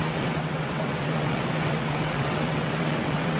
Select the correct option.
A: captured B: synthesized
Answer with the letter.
B